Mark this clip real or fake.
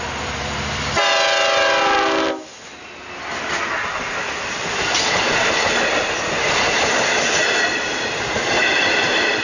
real